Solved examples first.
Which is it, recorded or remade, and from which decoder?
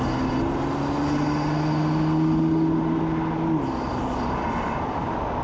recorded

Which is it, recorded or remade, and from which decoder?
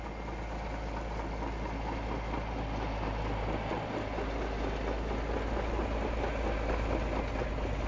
recorded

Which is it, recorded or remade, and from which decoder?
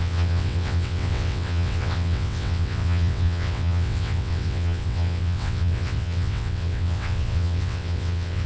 remade, vocoder, WaveNeXt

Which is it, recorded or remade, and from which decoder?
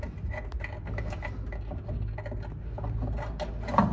recorded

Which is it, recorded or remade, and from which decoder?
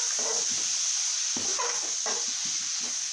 recorded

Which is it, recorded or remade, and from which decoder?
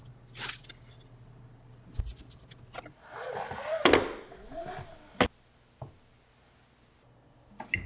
recorded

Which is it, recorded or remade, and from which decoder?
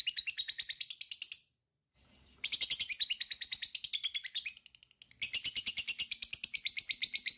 recorded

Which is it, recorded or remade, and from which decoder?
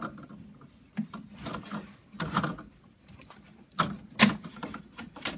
recorded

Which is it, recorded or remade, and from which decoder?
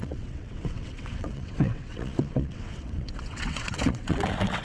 remade, vocoder, WaveNeXt